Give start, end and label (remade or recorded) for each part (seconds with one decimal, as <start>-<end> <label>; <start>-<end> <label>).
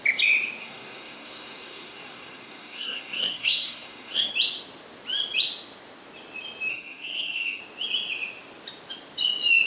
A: 0.0-0.6 recorded; 0.6-4.3 remade; 4.3-6.7 recorded; 6.7-7.6 remade; 7.6-9.7 recorded